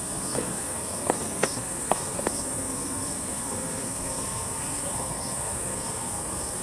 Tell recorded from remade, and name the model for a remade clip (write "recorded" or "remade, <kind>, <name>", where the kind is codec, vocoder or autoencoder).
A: remade, codec, SNAC